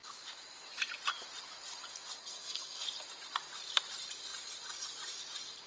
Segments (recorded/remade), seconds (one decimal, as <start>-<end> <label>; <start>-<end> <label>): 0.0-2.2 recorded; 2.2-2.8 remade; 2.8-5.7 recorded